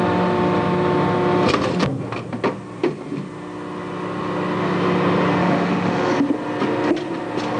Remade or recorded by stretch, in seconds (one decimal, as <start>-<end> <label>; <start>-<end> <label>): 0.0-5.4 recorded; 5.4-6.1 remade; 6.1-7.6 recorded